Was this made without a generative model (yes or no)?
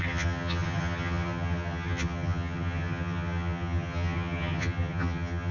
no